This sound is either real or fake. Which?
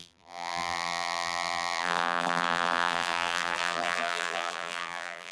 fake